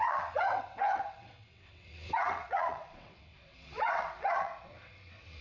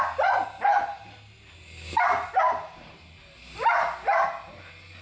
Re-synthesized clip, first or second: first